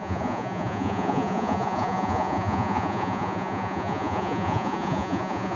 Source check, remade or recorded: remade